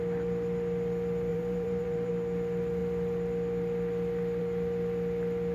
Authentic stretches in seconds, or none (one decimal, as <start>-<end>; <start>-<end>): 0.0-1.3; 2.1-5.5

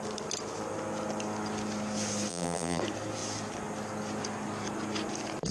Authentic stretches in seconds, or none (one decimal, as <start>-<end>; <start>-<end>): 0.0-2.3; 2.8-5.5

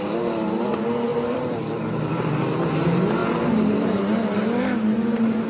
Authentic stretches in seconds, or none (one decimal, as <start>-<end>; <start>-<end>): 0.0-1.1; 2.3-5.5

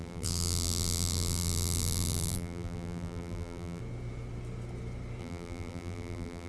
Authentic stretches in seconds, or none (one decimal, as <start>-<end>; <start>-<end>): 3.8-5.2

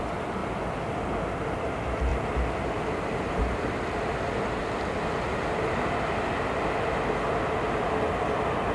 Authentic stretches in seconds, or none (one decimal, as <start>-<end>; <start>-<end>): 0.0-8.7

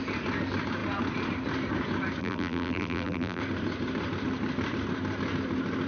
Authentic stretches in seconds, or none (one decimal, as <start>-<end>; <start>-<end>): 0.0-2.2; 3.4-5.9